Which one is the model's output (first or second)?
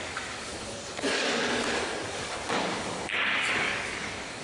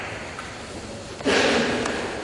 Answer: first